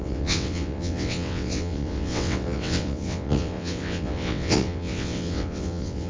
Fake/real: fake